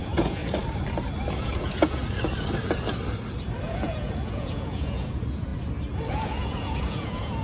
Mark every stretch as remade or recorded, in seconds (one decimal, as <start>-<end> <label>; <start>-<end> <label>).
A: 0.0-0.4 remade; 0.4-1.3 recorded; 1.3-2.0 remade; 2.0-3.6 recorded; 3.6-5.5 remade; 5.5-6.1 recorded; 6.1-7.4 remade